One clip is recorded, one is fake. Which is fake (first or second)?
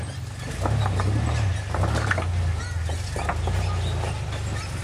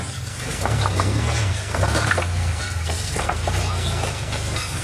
second